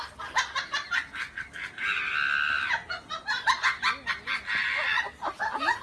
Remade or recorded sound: recorded